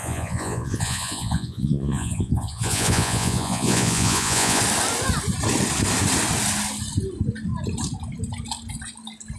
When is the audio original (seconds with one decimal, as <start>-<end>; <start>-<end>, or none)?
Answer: 4.6-9.4